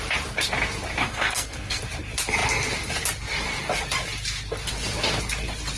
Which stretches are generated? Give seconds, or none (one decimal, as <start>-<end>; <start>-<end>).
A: 1.0-1.8